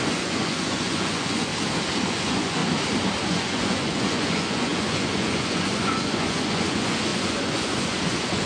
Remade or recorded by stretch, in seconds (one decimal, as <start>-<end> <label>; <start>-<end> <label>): 0.0-1.5 remade; 1.5-2.1 recorded; 2.1-2.6 remade; 2.6-3.3 recorded; 3.3-8.5 remade